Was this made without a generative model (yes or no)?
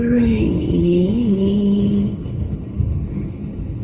no